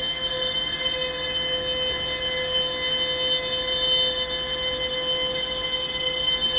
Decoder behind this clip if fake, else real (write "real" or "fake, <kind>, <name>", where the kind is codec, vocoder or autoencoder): real